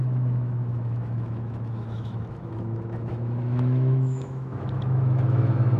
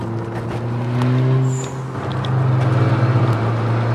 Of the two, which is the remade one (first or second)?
first